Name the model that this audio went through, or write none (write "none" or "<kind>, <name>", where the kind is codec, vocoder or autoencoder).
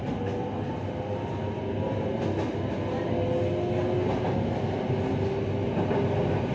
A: none